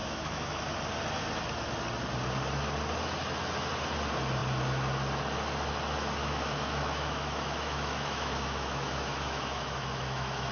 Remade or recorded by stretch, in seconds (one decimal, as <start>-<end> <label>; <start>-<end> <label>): 0.0-0.6 remade; 0.6-6.2 recorded; 6.2-10.5 remade